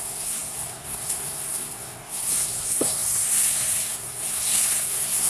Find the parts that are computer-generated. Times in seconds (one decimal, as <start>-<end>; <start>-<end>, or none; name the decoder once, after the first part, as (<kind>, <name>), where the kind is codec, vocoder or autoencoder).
0.0-5.3 (codec, SNAC)